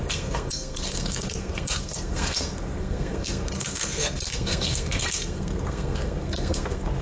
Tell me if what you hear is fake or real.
fake